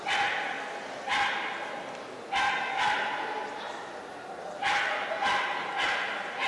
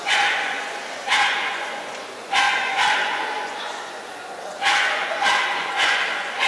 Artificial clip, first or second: second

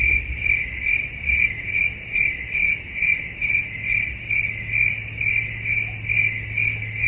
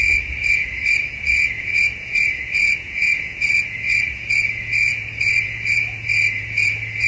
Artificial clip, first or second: second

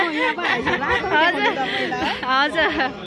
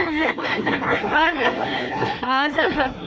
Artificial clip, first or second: second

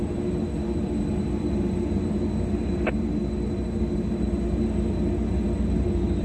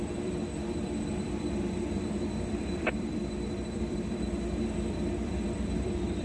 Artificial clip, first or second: second